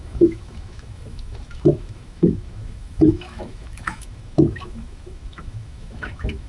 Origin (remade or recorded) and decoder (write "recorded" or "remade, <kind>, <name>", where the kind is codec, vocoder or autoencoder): remade, autoencoder, DAC-VAE